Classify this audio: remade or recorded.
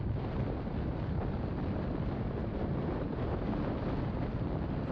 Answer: recorded